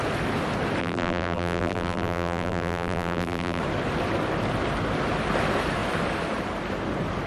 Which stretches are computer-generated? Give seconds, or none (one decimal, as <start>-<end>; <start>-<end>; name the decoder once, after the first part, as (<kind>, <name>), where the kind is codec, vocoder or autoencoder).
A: 0.8-3.6 (vocoder, BigVGAN v2)